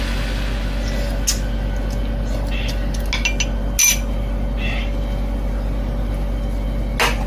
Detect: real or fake real